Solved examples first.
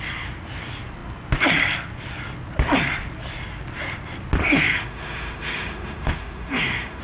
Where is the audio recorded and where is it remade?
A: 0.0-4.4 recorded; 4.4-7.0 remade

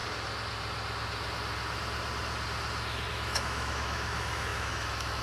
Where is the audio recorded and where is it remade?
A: 0.0-3.1 recorded; 3.1-5.2 remade

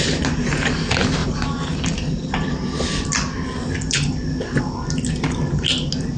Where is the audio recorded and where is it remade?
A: 0.0-6.2 recorded